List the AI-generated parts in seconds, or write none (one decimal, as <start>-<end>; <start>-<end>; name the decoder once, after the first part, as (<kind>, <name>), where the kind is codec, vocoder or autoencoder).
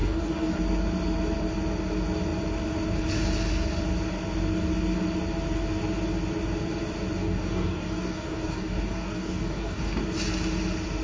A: 0.0-0.6 (codec, DAC); 7.2-10.0